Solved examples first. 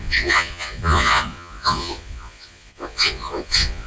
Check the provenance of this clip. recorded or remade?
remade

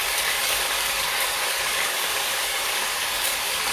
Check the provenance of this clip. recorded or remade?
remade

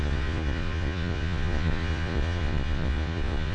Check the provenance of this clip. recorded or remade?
remade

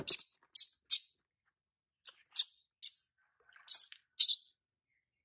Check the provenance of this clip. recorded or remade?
recorded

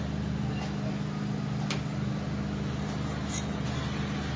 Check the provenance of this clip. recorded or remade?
recorded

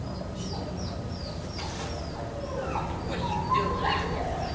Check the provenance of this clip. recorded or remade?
recorded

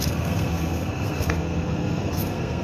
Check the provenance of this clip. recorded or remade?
remade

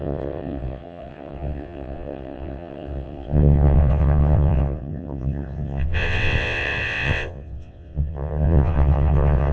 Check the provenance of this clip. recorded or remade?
remade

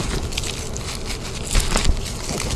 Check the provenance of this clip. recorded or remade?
recorded